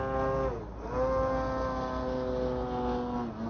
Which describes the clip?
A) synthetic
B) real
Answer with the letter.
B